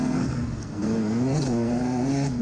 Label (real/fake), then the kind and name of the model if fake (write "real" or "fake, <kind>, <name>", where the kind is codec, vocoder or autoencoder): fake, codec, SNAC